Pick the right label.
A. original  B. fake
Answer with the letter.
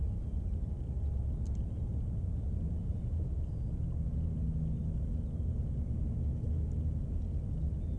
A